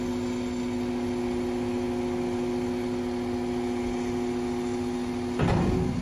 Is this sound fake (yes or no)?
no